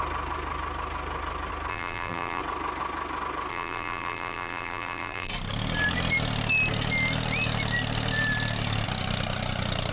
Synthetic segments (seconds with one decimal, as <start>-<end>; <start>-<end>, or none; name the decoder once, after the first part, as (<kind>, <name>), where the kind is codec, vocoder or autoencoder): 1.7-2.4 (vocoder, BigVGAN v2); 3.5-5.3